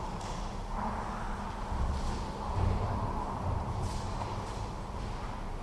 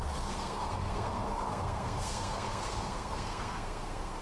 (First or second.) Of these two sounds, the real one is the first